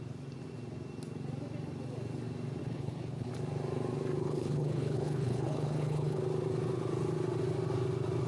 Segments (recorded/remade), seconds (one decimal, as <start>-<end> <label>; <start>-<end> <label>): 0.0-2.6 recorded; 2.6-3.3 remade; 3.3-4.2 recorded; 4.2-6.2 remade; 6.2-8.3 recorded